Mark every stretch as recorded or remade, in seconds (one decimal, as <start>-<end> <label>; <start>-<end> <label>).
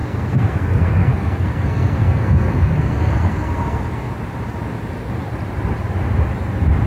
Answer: 0.0-4.1 remade; 4.1-6.9 recorded